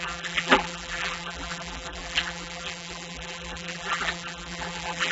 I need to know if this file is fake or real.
fake